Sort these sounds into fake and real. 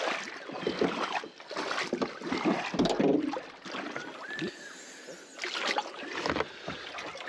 real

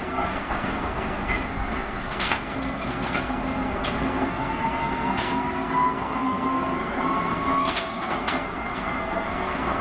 fake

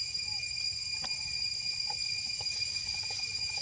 real